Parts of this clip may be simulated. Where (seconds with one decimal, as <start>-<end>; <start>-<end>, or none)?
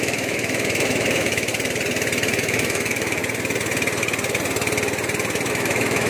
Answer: 0.0-1.5; 2.4-3.2; 5.5-6.1